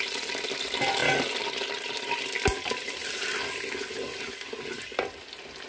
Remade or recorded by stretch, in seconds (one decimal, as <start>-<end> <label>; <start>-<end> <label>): 0.0-5.7 recorded

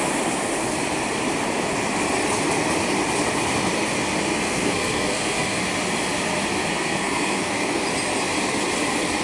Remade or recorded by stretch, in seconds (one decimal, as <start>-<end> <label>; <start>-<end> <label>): 0.0-4.3 recorded; 4.3-5.6 remade; 5.6-6.7 recorded; 6.7-7.8 remade; 7.8-9.2 recorded

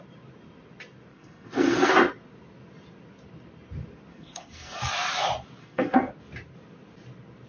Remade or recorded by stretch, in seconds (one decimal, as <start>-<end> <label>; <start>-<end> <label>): 0.0-1.1 recorded; 1.1-1.9 remade; 1.9-4.1 recorded; 4.1-4.9 remade; 4.9-5.6 recorded; 5.6-6.1 remade; 6.1-7.5 recorded

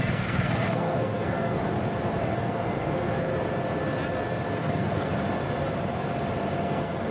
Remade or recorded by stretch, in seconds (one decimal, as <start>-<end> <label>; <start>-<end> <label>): 0.0-1.6 remade; 1.6-2.2 recorded; 2.2-3.3 remade; 3.3-4.6 recorded; 4.6-5.1 remade; 5.1-6.6 recorded; 6.6-7.1 remade

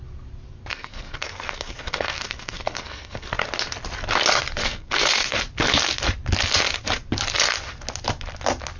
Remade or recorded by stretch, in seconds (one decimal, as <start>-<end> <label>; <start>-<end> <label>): 0.0-0.7 recorded; 0.7-3.3 remade; 3.3-4.6 recorded; 4.6-5.3 remade; 5.3-8.8 recorded

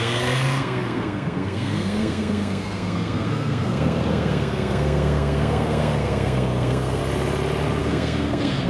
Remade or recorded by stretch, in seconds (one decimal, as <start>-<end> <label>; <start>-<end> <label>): 0.0-7.0 remade; 7.0-7.8 recorded; 7.8-8.7 remade

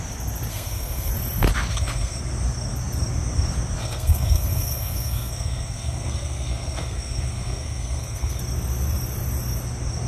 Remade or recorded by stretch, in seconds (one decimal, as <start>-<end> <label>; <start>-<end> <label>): 0.0-0.5 recorded; 0.5-1.1 remade; 1.1-1.7 recorded; 1.7-2.2 remade; 2.2-3.8 recorded; 3.8-8.4 remade; 8.4-10.1 recorded

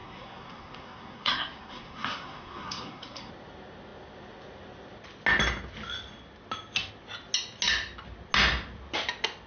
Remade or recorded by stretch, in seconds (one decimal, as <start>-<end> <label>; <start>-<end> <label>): 0.0-3.3 remade; 3.3-9.5 recorded